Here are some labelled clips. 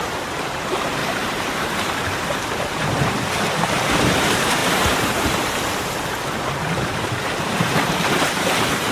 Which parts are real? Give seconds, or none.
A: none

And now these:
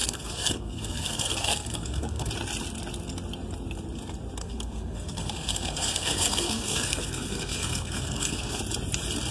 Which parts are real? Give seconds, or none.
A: 2.3-4.4; 8.6-9.3